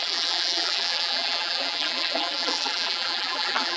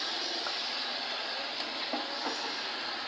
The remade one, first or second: first